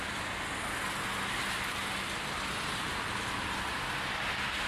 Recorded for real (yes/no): yes